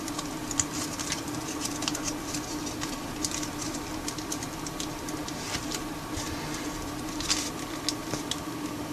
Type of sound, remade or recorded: recorded